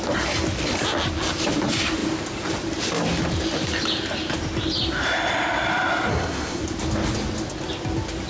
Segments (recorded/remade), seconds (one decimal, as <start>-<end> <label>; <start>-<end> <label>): 0.0-6.1 recorded; 6.1-6.6 remade; 6.6-8.3 recorded